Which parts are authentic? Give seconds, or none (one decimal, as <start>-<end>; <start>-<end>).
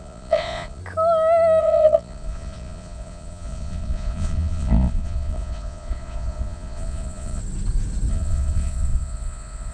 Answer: 0.8-1.6; 7.4-8.1